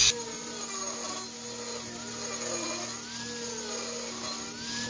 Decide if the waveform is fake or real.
real